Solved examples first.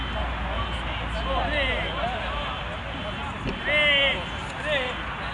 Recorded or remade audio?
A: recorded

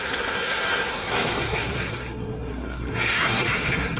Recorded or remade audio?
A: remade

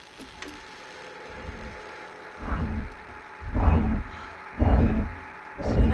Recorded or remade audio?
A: recorded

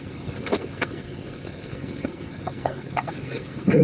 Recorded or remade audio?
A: remade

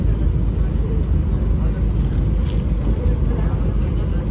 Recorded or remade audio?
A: recorded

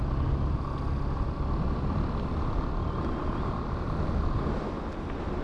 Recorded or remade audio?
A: recorded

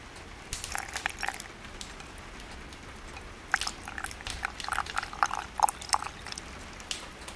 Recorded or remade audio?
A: recorded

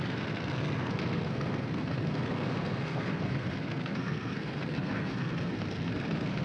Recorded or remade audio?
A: remade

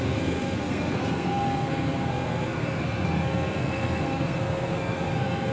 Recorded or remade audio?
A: remade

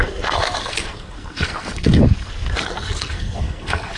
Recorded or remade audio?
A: remade